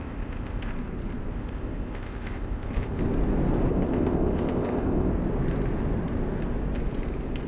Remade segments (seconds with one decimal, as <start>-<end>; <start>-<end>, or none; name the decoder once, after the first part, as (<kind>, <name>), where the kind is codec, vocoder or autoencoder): 0.0-0.7 (codec, ZipCodec); 1.3-3.0; 3.7-5.1